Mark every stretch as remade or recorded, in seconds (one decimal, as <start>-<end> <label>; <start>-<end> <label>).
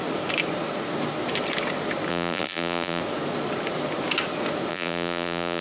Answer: 0.0-2.1 recorded; 2.1-3.0 remade; 3.0-4.7 recorded; 4.7-5.6 remade